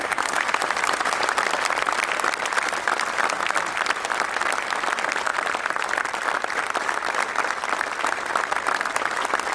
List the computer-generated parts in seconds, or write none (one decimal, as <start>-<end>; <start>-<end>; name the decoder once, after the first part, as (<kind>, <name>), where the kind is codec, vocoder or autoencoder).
none